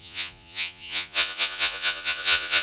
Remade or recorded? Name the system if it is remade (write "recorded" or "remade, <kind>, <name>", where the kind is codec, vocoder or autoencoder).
remade, vocoder, Vocos